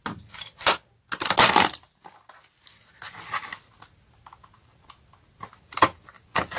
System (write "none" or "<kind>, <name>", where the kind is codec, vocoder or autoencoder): none